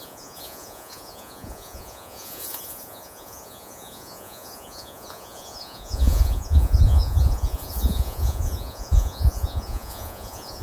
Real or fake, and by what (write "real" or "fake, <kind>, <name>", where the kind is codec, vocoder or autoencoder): fake, vocoder, Vocos